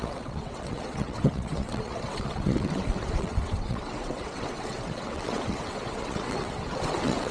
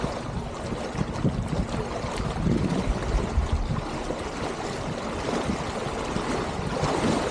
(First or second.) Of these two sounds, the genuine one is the second